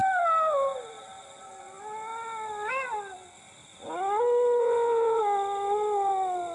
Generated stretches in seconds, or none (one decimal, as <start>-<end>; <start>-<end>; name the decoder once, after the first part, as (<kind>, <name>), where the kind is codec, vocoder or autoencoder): 4.6-5.2 (vocoder, Vocos)